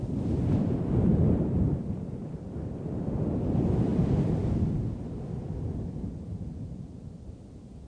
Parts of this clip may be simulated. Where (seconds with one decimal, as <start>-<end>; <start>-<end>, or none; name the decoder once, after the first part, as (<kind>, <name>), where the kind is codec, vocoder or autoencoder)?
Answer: none